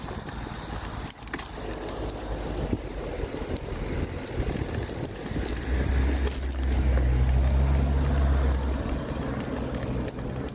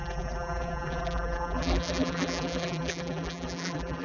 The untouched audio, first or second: first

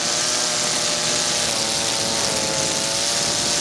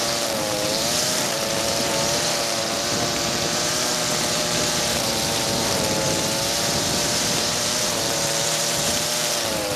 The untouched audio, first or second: first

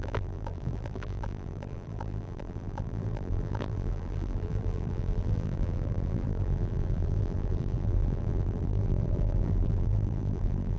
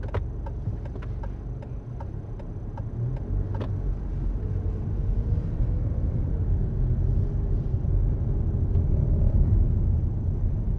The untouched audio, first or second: second